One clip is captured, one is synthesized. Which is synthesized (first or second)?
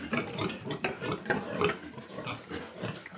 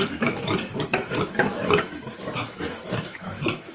second